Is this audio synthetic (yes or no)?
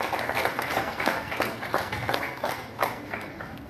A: yes